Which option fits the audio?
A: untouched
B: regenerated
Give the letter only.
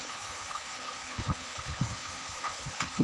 B